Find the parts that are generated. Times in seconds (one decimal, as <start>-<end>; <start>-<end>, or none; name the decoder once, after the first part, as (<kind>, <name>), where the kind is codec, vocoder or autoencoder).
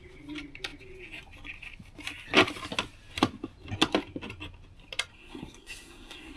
5.1-6.4 (codec, SNAC)